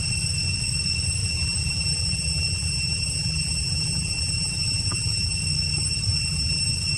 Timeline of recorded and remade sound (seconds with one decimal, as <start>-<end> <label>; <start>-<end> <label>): 0.0-1.2 recorded; 1.2-5.4 remade; 5.4-6.1 recorded; 6.1-6.6 remade; 6.6-7.0 recorded